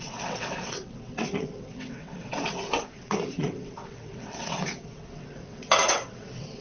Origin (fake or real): fake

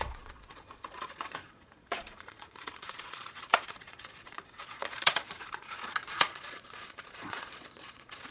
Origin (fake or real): fake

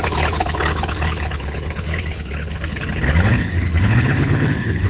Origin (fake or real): fake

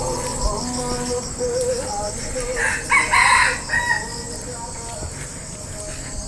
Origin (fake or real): real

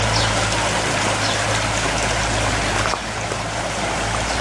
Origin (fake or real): real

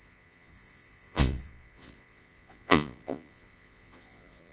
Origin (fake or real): fake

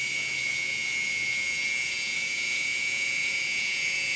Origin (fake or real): fake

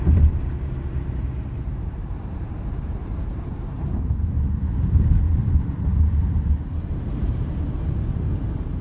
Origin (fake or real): fake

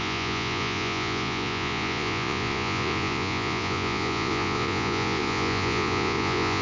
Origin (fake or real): fake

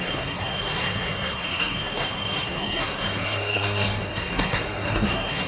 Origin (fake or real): fake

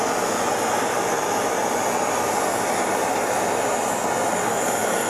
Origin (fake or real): real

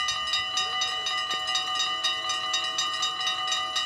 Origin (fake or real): real